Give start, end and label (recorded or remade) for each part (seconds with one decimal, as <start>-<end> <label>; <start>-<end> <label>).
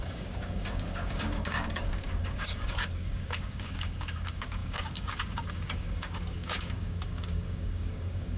0.0-8.4 remade